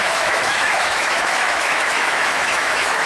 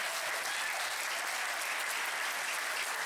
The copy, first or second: first